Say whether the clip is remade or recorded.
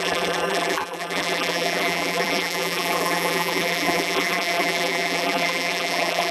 remade